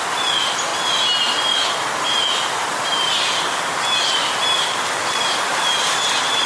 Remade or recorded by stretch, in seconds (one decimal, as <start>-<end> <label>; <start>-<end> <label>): 0.0-5.5 recorded; 5.5-6.5 remade